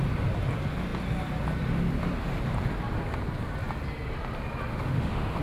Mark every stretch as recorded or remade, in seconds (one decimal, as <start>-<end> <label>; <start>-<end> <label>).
0.0-4.7 recorded; 4.7-5.4 remade